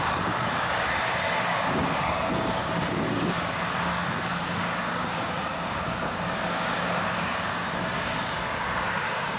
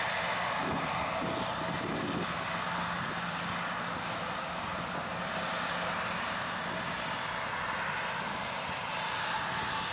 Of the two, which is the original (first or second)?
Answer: second